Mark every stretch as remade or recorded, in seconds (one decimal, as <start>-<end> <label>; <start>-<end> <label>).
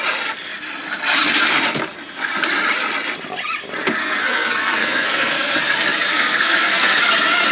0.0-4.0 recorded; 4.0-5.6 remade; 5.6-6.1 recorded; 6.1-7.0 remade; 7.0-7.5 recorded